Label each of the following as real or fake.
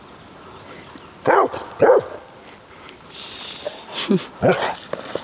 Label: real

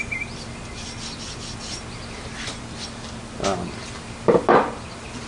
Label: real